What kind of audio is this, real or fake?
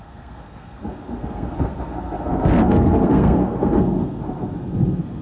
fake